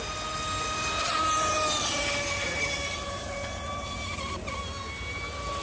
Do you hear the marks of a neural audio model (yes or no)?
no